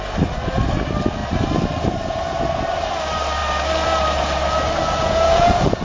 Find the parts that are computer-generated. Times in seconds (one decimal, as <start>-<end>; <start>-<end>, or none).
5.0-5.8